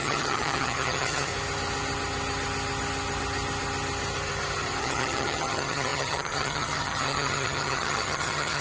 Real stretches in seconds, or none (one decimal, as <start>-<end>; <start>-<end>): 1.3-4.8